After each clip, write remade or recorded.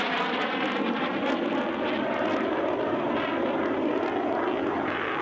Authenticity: recorded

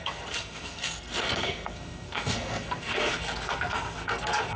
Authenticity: remade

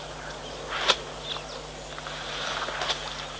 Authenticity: recorded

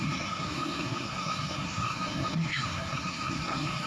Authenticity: remade